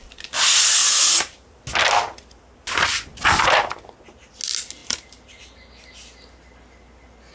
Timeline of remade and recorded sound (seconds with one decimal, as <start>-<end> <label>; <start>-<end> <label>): 0.0-0.8 recorded; 0.8-1.4 remade; 1.4-4.8 recorded; 4.8-5.4 remade; 5.4-7.3 recorded